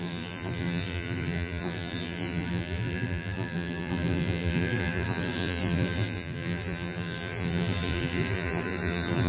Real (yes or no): no